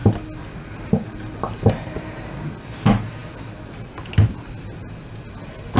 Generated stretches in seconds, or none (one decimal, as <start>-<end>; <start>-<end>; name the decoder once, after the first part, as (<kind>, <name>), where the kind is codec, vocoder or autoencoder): none